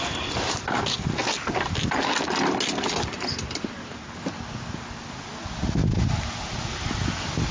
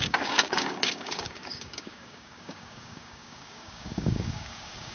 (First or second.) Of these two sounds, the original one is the first